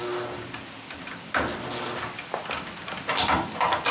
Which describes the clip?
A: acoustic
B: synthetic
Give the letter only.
A